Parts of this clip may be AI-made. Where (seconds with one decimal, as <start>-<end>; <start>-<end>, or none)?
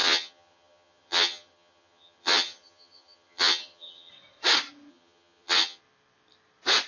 0.0-4.1; 4.9-5.8